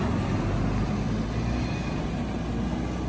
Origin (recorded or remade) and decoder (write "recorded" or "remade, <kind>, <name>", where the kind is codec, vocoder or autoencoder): recorded